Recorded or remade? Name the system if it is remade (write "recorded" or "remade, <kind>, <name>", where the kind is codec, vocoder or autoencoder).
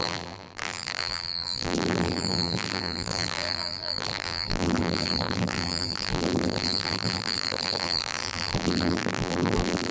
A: remade, vocoder, BigVGAN v2